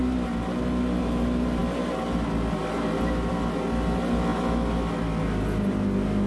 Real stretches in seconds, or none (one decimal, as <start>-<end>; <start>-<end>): 0.0-6.3